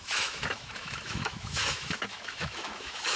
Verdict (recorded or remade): remade